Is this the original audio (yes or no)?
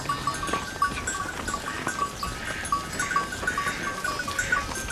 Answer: yes